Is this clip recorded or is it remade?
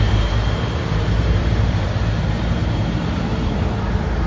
remade